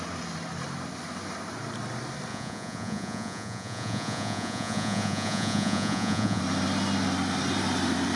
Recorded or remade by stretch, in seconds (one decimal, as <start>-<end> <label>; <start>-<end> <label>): 0.0-2.3 recorded; 2.3-6.4 remade; 6.4-8.2 recorded